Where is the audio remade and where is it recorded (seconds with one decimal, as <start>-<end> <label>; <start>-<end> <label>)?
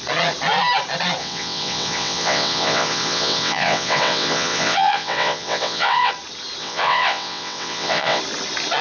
0.0-1.2 recorded; 1.2-6.1 remade; 6.1-6.6 recorded; 6.6-8.2 remade; 8.2-8.8 recorded